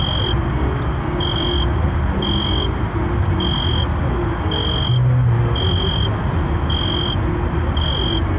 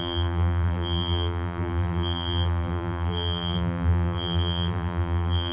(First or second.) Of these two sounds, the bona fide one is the first